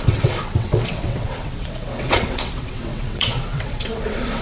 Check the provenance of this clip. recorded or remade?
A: remade